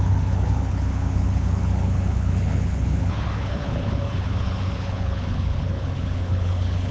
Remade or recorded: remade